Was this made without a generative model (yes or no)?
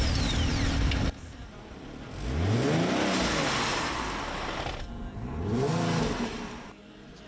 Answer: yes